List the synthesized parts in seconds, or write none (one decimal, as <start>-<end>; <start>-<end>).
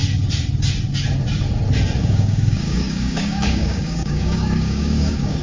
2.0-5.4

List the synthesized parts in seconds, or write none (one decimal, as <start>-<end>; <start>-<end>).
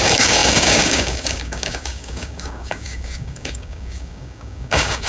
0.0-5.1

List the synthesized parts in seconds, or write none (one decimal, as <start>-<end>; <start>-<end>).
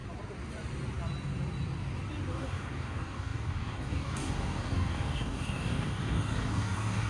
2.3-7.1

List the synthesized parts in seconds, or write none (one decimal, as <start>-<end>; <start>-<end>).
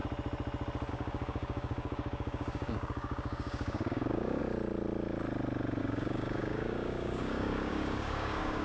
0.9-4.4; 5.8-8.6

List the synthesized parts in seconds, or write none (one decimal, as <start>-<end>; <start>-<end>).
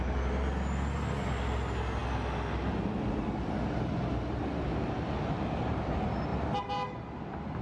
none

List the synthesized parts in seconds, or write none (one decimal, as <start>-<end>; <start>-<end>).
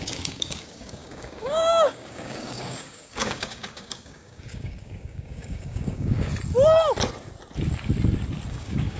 0.0-6.3; 8.5-9.0